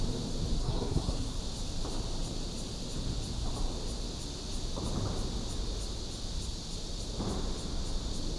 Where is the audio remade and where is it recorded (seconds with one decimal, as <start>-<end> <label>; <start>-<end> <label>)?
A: 0.0-0.6 recorded; 0.6-1.4 remade; 1.4-8.4 recorded